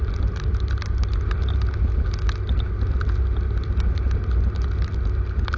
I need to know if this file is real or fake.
real